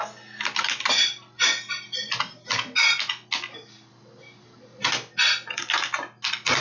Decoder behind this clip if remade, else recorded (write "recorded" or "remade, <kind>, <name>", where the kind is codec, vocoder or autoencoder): recorded